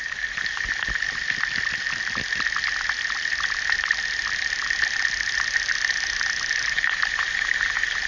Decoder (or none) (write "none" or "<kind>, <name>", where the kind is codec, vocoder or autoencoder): none